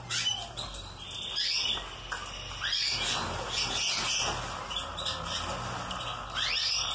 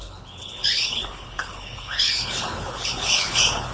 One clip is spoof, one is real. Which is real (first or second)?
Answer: first